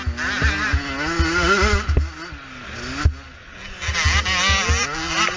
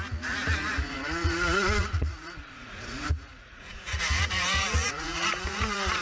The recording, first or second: first